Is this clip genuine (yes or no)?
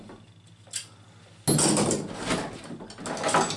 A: yes